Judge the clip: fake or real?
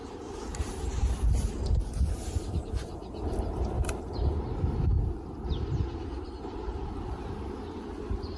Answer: fake